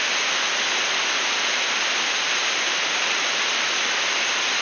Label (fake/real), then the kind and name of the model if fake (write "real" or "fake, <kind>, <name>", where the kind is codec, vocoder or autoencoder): real